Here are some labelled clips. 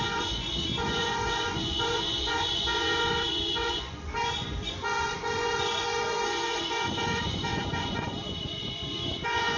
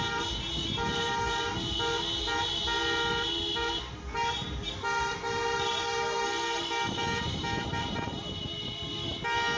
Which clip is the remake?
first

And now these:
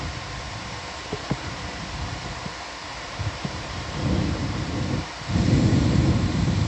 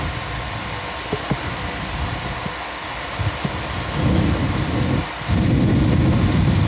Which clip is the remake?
first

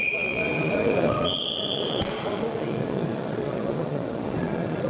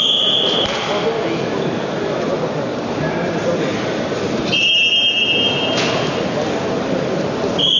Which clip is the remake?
first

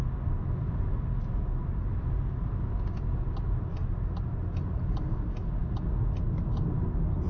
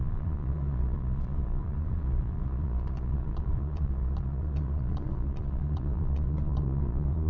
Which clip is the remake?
second